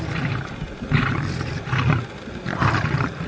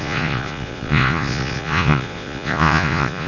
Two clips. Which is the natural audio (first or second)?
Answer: first